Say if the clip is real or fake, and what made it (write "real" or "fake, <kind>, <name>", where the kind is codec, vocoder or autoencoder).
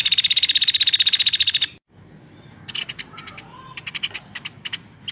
real